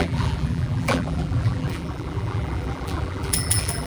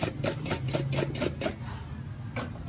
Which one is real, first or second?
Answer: second